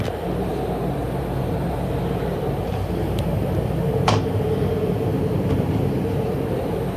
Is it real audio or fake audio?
fake